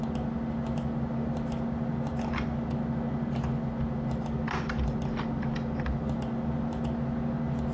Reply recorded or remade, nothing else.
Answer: recorded